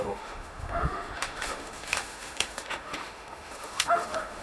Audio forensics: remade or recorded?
remade